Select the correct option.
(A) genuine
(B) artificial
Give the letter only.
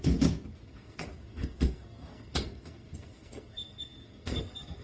B